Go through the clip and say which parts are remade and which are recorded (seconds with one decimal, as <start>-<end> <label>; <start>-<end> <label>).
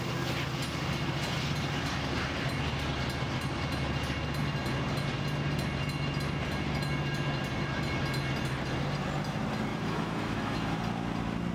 0.0-9.7 recorded; 9.7-10.8 remade; 10.8-11.5 recorded